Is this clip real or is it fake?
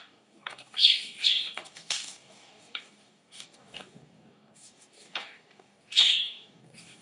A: fake